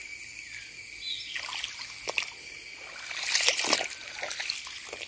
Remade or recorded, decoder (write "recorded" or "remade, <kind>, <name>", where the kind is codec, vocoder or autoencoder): recorded